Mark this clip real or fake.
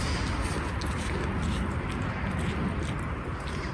real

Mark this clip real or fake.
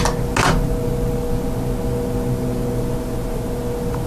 real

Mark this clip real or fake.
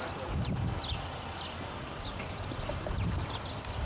real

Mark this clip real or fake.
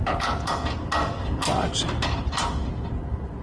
real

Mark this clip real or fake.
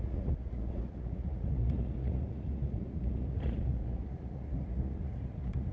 fake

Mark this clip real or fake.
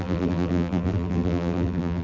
fake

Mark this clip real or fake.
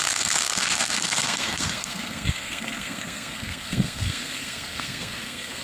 fake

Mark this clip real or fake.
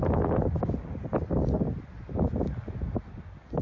real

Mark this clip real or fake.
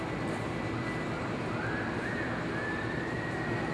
real